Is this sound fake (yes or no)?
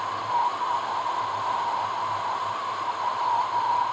no